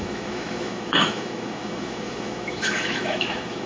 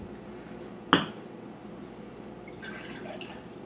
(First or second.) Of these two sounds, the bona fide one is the second